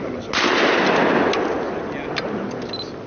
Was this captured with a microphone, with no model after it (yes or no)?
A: yes